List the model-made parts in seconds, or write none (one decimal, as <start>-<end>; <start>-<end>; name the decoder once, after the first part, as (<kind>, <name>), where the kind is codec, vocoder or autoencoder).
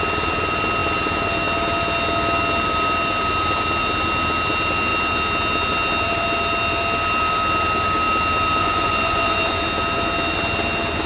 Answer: 8.6-9.6 (vocoder, Vocos)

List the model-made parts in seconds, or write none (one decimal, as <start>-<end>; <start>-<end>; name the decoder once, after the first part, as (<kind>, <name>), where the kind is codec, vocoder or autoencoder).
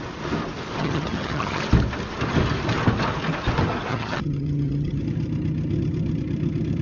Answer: 0.8-1.6 (vocoder, HiFi-GAN); 3.9-5.0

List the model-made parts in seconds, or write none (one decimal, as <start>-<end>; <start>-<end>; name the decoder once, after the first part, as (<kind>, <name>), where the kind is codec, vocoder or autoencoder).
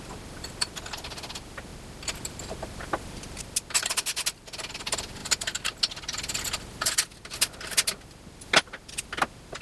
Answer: none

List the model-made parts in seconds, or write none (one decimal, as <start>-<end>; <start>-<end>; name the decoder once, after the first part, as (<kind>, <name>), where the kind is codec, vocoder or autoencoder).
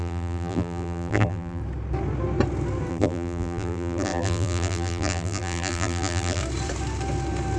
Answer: 0.0-1.6 (vocoder, BigVGAN v2); 2.9-6.4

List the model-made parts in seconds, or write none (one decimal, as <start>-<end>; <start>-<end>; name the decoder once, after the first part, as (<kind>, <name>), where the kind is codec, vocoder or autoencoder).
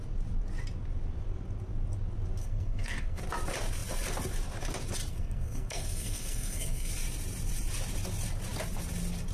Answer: 2.4-3.2 (codec, SNAC); 5.1-6.9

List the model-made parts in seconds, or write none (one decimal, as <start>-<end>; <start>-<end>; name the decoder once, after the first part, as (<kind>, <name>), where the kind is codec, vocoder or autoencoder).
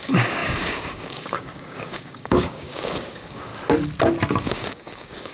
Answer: 0.0-3.5 (codec, DAC); 4.4-5.3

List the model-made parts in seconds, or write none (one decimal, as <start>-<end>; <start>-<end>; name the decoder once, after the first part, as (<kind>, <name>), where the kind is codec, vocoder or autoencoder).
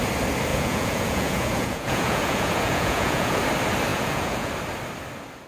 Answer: 0.5-3.4 (vocoder, Vocos); 3.9-4.5